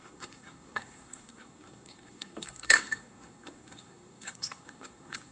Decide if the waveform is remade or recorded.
remade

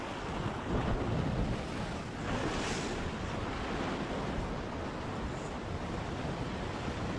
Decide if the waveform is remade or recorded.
recorded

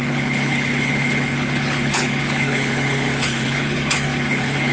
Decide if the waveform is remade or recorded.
remade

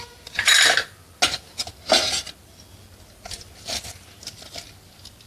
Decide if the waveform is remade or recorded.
recorded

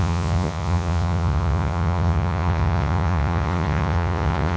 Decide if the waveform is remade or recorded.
remade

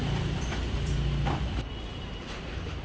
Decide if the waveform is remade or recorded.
remade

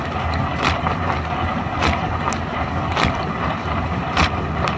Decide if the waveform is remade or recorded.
recorded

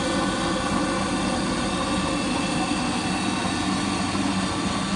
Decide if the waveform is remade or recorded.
recorded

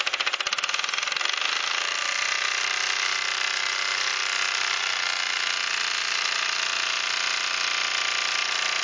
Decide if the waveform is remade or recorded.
recorded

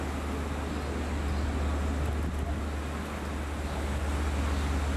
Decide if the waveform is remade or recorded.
recorded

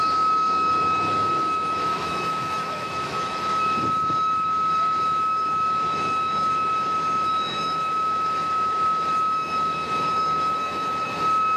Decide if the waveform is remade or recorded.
remade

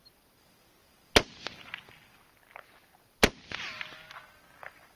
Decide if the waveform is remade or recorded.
recorded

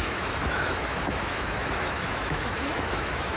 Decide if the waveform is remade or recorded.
remade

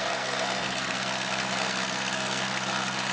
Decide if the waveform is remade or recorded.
remade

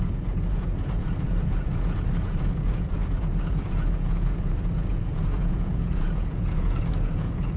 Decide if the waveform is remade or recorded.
remade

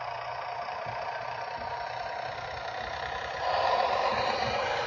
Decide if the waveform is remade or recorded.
remade